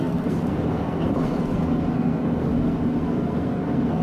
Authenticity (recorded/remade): remade